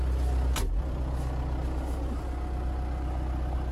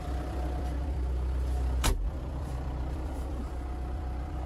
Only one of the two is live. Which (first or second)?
first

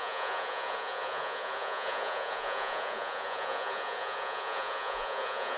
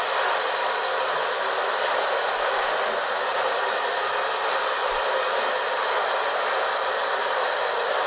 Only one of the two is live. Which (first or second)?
second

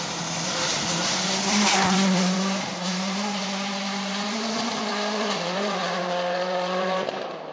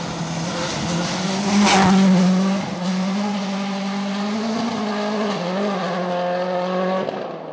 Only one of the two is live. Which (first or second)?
second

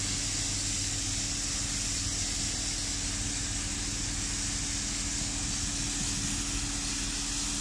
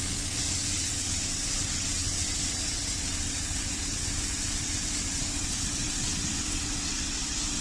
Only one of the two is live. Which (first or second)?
first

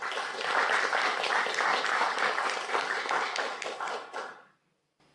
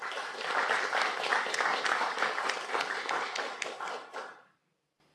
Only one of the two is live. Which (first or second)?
first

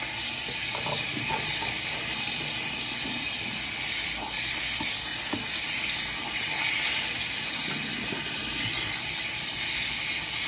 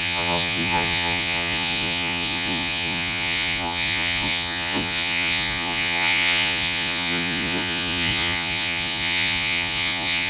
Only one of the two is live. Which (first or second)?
first